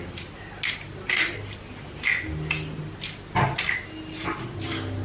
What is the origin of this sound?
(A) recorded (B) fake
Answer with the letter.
A